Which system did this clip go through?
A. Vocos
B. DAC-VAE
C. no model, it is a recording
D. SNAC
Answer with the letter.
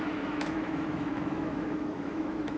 B